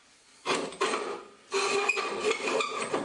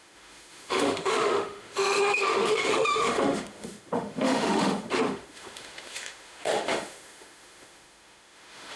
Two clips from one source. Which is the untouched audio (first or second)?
first